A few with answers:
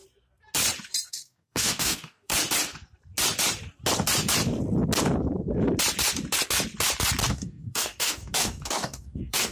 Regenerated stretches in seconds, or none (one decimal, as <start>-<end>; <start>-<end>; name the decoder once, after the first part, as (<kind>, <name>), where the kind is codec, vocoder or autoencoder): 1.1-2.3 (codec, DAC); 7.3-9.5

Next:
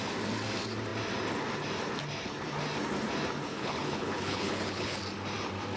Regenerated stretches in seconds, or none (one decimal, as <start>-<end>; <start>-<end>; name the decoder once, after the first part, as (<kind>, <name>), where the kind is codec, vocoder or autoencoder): 3.5-5.0 (codec, HILCodec)

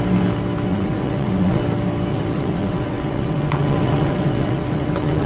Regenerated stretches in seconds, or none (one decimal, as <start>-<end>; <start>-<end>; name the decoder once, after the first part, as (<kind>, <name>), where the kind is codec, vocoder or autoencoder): 0.7-1.6 (vocoder, WaveNeXt); 2.1-5.3

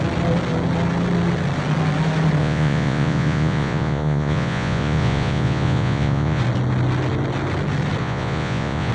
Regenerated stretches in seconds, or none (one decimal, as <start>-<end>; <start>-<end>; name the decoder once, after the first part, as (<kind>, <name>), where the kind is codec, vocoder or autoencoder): 2.4-6.4 (vocoder, Vocos); 8.0-8.9

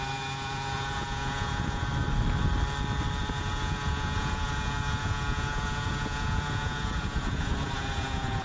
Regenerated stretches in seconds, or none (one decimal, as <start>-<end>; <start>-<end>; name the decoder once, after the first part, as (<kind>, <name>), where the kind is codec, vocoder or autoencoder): 0.0-1.9 (vocoder, Vocos); 3.2-8.4

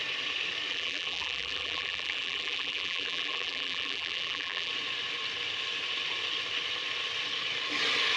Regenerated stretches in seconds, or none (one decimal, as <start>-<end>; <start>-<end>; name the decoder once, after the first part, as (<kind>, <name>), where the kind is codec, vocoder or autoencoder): 0.7-4.7 (vocoder, BigVGAN v2)